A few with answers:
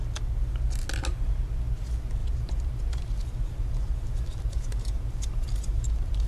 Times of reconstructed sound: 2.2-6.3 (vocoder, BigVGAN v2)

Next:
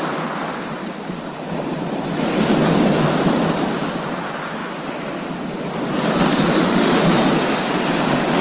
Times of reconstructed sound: 6.6-7.1 (autoencoder, DAC-VAE)

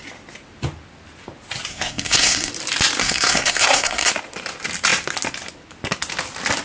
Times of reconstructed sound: 1.7-2.5 (codec, SNAC); 3.0-4.1